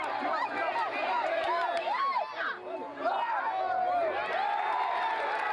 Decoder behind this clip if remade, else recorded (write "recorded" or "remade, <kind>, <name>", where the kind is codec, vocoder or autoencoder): recorded